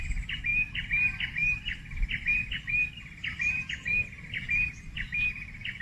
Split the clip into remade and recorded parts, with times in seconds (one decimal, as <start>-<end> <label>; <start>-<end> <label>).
0.0-5.8 recorded